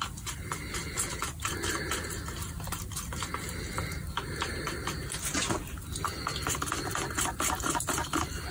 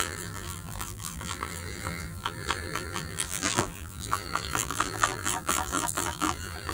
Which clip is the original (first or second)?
first